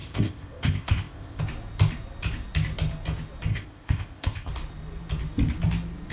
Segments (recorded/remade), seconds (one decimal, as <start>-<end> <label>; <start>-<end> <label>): 0.0-1.4 remade; 1.4-3.5 recorded; 3.5-4.5 remade; 4.5-6.1 recorded